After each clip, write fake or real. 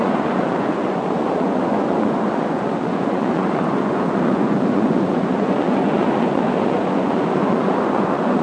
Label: fake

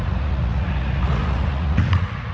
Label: fake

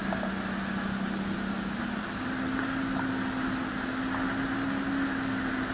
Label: real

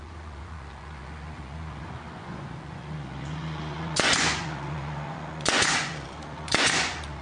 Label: fake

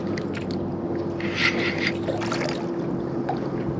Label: real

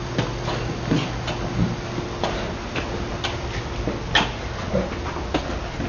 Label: real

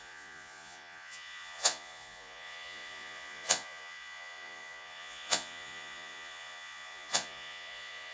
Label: fake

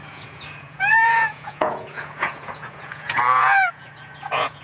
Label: fake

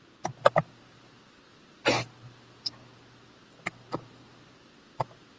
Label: real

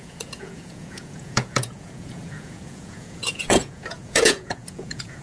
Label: fake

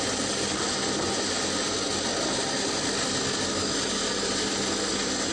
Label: real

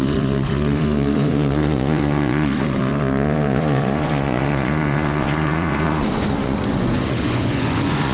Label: fake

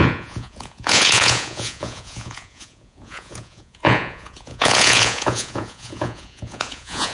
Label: fake